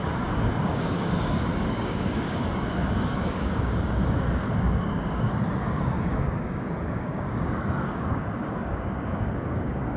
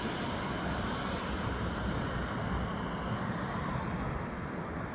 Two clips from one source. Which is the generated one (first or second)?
first